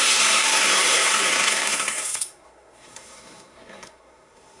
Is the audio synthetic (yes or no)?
yes